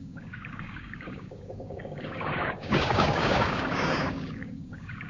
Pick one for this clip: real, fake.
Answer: fake